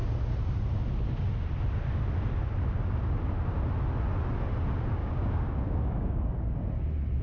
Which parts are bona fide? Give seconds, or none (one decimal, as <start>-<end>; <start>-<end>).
0.0-5.0; 6.6-7.2